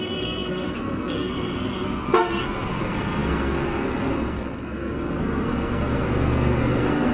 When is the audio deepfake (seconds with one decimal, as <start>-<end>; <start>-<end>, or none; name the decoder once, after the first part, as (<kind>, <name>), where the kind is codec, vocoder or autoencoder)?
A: 0.0-7.1 (codec, SNAC)